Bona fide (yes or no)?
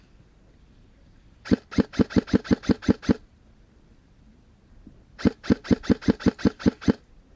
yes